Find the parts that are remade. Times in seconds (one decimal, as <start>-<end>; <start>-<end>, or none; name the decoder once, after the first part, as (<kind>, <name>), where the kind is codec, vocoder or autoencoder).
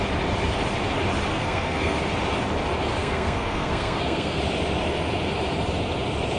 1.3-2.0 (codec, SNAC); 3.0-4.4